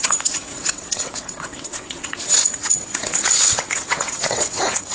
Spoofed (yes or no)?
yes